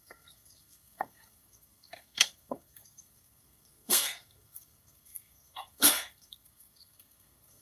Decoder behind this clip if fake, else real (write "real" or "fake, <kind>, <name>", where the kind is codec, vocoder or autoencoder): fake, codec, SNAC